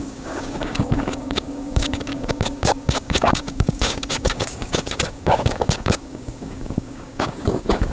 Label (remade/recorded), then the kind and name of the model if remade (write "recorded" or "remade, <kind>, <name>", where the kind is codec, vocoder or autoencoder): remade, codec, DAC